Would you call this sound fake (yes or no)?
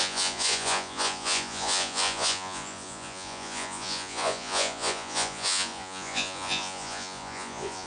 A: yes